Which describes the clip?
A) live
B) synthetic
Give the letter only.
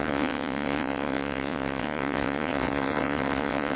B